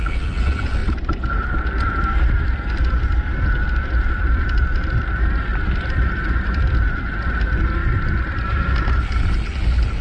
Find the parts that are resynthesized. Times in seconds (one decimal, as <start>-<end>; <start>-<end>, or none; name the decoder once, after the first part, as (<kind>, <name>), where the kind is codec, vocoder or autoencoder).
0.8-2.3 (vocoder, BigVGAN v2); 5.5-7.2; 7.8-9.0